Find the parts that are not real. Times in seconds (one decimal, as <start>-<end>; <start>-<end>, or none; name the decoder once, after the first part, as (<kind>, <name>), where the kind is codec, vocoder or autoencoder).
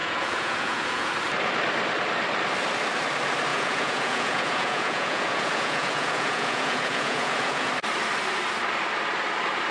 0.0-1.1 (vocoder, Vocos); 3.5-7.7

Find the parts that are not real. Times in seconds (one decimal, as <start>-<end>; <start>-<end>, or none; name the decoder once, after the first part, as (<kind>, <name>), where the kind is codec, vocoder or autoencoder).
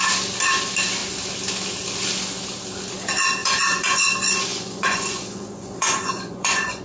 3.4-4.1 (vocoder, Vocos); 4.5-6.8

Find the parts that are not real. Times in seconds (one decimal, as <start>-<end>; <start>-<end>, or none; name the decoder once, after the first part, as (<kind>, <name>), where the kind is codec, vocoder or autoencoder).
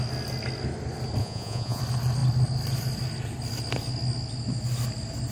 1.2-1.8 (vocoder, Vocos)